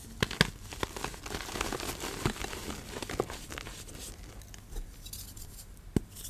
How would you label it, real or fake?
real